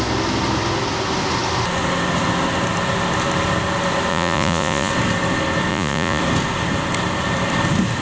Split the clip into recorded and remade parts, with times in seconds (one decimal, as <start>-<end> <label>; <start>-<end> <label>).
0.0-4.1 recorded; 4.1-4.9 remade; 4.9-5.7 recorded; 5.7-6.2 remade; 6.2-8.0 recorded